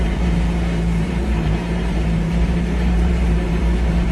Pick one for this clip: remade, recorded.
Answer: remade